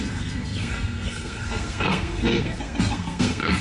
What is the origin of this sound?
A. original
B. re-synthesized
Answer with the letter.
B